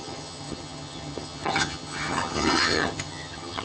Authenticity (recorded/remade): remade